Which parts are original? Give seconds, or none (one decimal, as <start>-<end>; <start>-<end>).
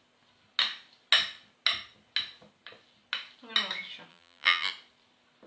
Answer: 0.0-4.1; 4.7-5.5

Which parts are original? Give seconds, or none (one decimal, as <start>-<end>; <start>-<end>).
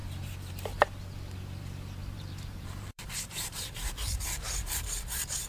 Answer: 0.0-2.0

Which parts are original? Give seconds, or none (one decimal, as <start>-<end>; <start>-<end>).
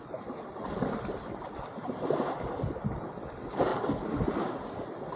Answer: 0.0-3.1; 3.7-4.6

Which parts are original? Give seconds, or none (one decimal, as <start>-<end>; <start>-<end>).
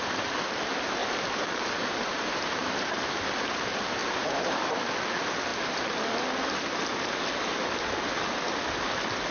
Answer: 0.0-1.0; 3.2-4.0; 4.9-9.3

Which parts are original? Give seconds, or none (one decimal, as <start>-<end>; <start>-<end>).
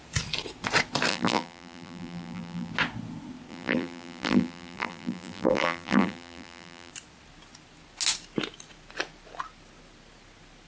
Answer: 0.0-1.1; 2.7-3.5; 6.9-10.7